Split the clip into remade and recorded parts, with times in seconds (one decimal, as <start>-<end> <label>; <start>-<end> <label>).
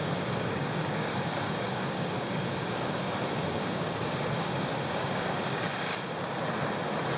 0.0-5.9 remade; 5.9-7.2 recorded